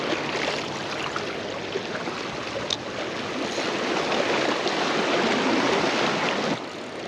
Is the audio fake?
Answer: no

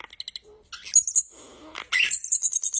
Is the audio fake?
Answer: no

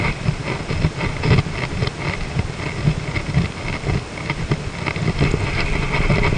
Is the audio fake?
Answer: no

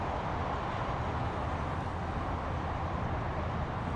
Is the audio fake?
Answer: no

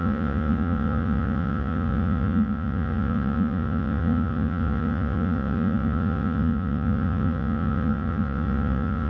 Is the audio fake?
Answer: yes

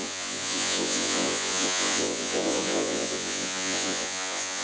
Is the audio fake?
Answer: yes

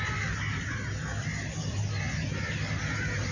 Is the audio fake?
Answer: no